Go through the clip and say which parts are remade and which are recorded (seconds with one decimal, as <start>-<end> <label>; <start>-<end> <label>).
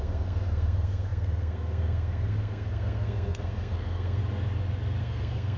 0.0-4.2 remade; 4.2-5.0 recorded; 5.0-5.6 remade